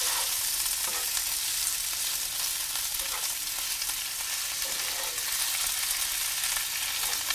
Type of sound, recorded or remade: recorded